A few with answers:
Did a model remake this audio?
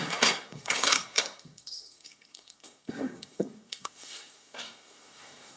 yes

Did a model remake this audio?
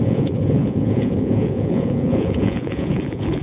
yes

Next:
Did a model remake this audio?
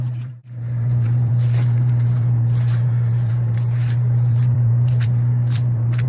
yes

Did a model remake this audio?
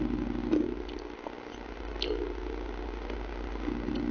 no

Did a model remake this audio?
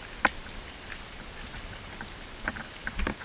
no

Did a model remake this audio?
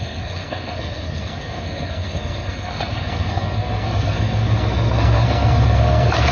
yes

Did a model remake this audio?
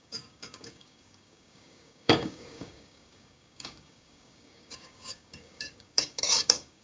yes